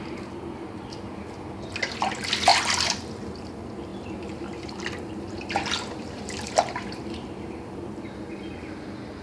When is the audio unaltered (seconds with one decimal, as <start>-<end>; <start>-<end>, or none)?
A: 0.0-2.5; 3.0-3.9; 8.5-9.2